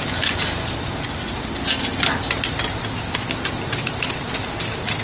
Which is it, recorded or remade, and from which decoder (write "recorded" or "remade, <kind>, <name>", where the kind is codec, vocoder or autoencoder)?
recorded